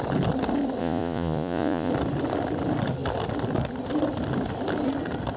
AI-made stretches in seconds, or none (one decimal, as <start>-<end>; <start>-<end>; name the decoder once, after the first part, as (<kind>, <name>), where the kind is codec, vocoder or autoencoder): 0.8-1.9 (vocoder, Vocos)